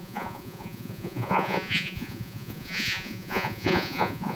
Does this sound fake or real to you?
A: fake